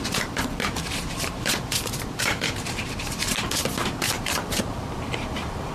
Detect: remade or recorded remade